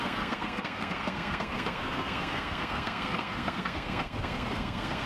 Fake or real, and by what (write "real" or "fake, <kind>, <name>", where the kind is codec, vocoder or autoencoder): fake, codec, SNAC